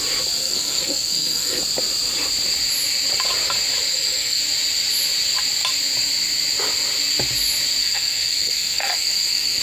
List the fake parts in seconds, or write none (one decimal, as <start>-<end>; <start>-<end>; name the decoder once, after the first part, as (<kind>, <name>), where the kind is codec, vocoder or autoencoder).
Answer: 0.4-1.6 (codec, SNAC); 3.9-4.4; 7.8-9.6